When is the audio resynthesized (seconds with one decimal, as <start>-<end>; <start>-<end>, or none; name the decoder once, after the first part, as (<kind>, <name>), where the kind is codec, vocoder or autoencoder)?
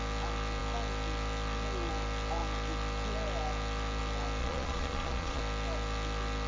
4.4-5.4 (vocoder, Vocos)